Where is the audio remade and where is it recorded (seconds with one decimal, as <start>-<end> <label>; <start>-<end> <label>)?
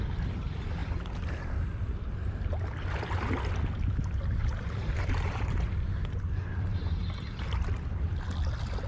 0.0-4.4 recorded; 4.4-5.9 remade; 5.9-6.7 recorded; 6.7-7.4 remade; 7.4-8.9 recorded